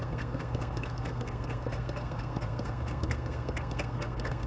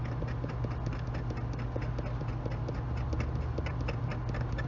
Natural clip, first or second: second